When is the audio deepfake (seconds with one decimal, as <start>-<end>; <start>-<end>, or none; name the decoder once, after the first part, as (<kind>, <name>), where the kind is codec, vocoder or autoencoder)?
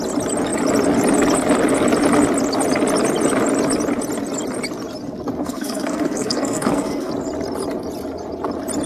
5.4-7.1 (codec, SNAC)